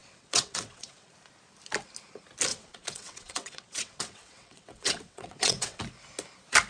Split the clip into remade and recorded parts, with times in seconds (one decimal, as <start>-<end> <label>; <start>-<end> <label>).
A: 0.0-1.1 remade; 1.1-2.5 recorded; 2.5-5.8 remade; 5.8-6.7 recorded